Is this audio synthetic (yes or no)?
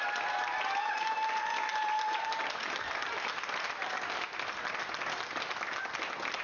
no